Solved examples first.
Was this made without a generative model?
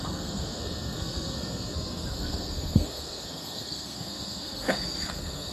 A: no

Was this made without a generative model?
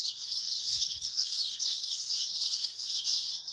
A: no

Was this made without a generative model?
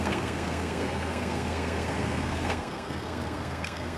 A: no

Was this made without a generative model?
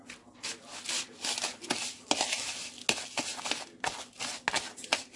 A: yes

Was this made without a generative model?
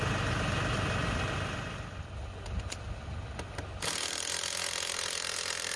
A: yes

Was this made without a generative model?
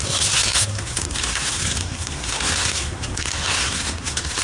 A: no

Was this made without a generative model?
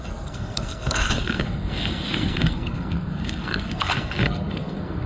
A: no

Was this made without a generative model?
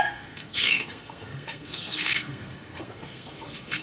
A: no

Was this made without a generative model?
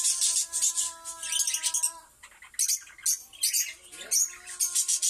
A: yes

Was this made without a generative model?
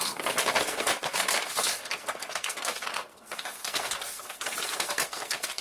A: no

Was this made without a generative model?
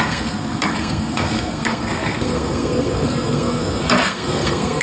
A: no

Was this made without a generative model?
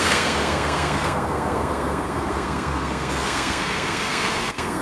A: no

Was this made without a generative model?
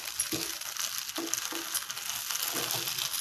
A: yes